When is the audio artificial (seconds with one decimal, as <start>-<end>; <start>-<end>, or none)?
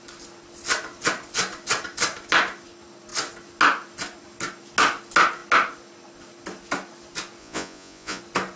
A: 7.4-8.2